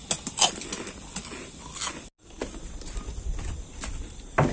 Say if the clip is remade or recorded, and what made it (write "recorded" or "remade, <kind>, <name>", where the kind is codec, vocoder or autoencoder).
recorded